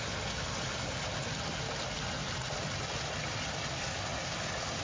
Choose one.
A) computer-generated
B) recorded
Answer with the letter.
B